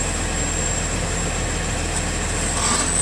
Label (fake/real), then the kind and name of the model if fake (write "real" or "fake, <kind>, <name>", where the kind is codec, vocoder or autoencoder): real